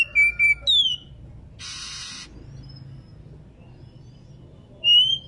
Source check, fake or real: real